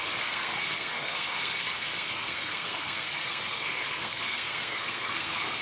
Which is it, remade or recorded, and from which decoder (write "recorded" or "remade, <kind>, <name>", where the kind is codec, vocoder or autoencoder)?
remade, codec, SNAC